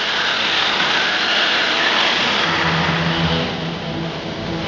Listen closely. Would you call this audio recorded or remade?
recorded